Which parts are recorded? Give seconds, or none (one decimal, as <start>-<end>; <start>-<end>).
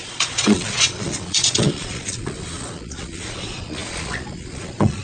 none